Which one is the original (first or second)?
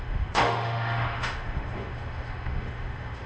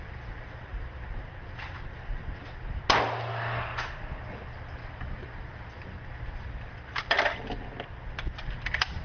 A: second